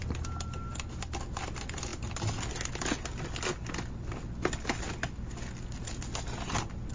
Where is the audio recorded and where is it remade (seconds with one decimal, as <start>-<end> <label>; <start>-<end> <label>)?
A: 0.0-6.9 recorded